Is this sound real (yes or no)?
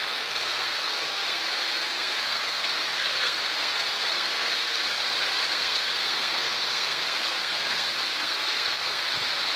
no